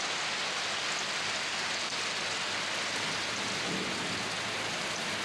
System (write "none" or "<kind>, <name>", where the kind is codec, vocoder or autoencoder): none